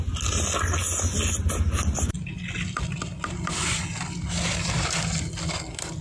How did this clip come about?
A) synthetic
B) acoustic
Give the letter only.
B